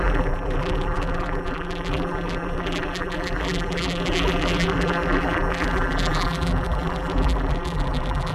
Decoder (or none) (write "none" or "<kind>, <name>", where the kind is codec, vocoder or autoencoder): vocoder, BigVGAN v2